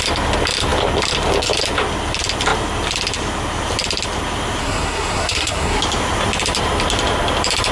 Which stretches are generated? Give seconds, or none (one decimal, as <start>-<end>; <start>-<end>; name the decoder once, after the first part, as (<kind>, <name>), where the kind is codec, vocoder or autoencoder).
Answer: 4.6-5.8 (codec, SNAC)